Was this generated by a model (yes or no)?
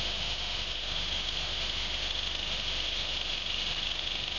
yes